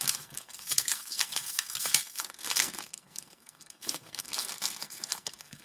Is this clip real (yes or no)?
no